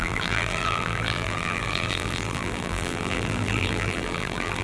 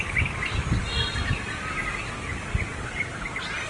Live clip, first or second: second